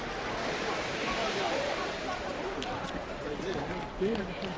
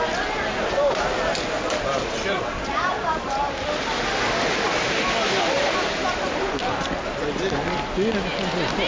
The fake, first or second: first